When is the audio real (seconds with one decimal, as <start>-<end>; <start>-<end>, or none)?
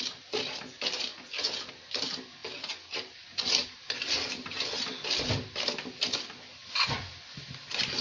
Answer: 0.0-8.0